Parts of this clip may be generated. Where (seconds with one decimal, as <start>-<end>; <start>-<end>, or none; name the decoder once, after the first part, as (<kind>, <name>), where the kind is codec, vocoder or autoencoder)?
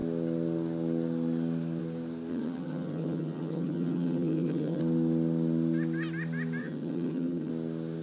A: 2.3-4.8 (vocoder, HiFi-GAN); 6.6-7.5